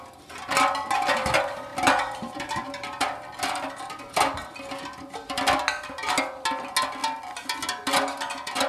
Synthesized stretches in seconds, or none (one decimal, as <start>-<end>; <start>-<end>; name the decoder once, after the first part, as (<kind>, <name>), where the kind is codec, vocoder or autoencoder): 1.7-3.7 (vocoder, BigVGAN v2); 7.0-7.6